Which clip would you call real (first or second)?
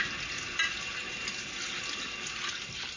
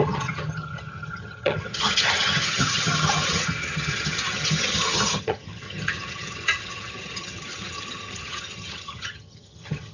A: first